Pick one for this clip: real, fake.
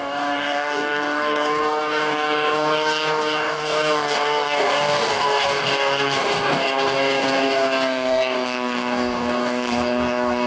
fake